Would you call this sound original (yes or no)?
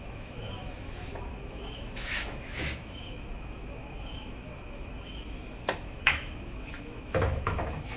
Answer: no